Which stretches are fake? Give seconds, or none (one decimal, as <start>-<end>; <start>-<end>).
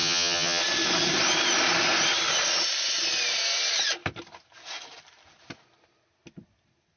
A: 0.0-0.6